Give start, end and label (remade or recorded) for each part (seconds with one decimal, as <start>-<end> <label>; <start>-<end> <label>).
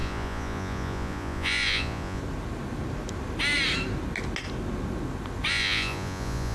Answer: 0.0-2.2 remade; 2.2-5.5 recorded; 5.5-6.5 remade